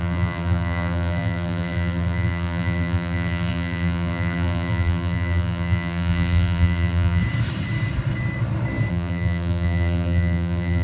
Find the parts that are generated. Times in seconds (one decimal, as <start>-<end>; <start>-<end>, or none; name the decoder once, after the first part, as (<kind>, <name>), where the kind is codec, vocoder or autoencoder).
0.0-7.2 (vocoder, BigVGAN v2); 8.9-10.8

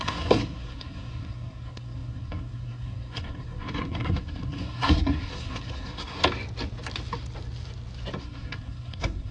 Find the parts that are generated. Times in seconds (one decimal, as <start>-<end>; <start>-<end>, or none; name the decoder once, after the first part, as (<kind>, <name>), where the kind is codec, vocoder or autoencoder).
0.0-6.2 (codec, SNAC); 8.2-9.3

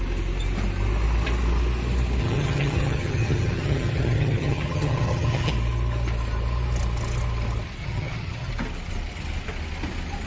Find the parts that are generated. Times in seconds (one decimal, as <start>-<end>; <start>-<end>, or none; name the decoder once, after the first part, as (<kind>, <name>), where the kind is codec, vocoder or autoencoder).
2.2-5.5 (vocoder, HiFi-GAN); 7.8-8.5

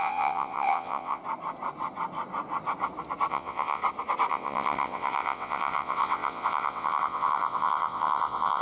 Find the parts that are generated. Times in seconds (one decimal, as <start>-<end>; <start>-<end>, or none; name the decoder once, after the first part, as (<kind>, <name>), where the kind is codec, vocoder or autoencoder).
0.0-1.2 (vocoder, WaveNeXt); 3.3-3.8; 4.3-8.6

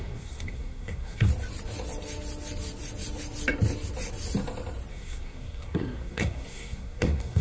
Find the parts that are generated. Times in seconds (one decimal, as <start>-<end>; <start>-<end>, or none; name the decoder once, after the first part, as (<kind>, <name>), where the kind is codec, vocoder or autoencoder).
0.0-1.3 (codec, SNAC); 4.9-7.4